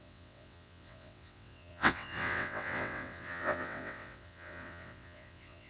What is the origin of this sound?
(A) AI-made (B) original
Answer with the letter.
A